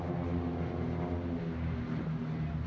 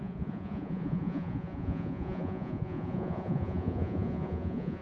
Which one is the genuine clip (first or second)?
first